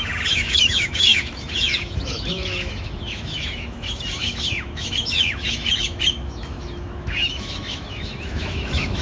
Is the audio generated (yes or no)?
yes